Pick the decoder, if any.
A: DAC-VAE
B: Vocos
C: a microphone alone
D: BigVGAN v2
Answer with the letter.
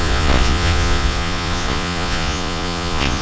B